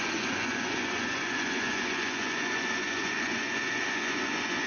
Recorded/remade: remade